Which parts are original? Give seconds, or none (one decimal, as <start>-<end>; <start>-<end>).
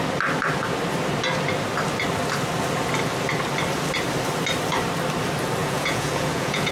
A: 0.0-5.6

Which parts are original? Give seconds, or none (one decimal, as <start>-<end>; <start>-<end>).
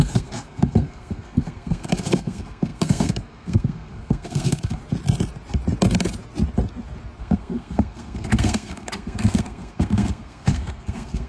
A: 4.8-7.2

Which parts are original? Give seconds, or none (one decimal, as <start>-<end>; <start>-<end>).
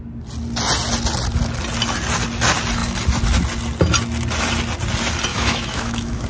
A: 0.0-5.3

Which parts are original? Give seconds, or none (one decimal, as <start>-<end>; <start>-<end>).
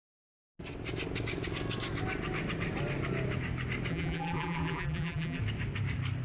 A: 0.0-3.9; 5.4-6.2